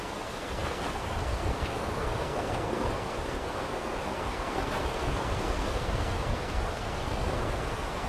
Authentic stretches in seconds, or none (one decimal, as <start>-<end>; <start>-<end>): none